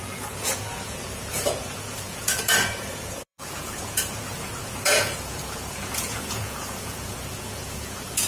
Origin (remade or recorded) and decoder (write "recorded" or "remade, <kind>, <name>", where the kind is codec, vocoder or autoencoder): remade, vocoder, Vocos